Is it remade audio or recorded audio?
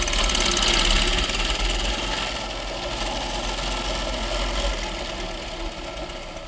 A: recorded